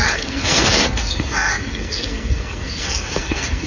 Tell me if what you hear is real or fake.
fake